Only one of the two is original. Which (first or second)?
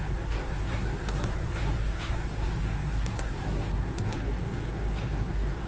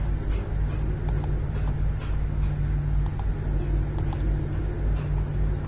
second